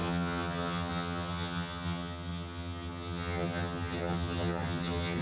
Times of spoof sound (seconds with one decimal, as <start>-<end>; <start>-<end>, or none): 0.0-5.2